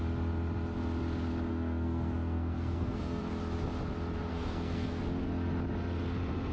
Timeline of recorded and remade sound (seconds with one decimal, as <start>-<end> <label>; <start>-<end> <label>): 0.0-1.5 recorded; 1.5-3.2 remade; 3.2-4.3 recorded; 4.3-5.0 remade; 5.0-6.5 recorded